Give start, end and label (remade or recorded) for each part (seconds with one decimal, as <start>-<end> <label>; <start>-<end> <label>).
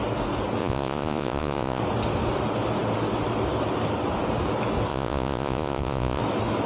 0.0-0.6 recorded; 0.6-1.8 remade; 1.8-4.9 recorded; 4.9-6.2 remade; 6.2-6.7 recorded